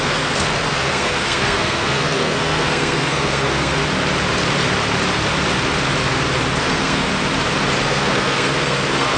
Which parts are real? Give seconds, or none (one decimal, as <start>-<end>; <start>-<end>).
3.8-6.6; 7.1-7.8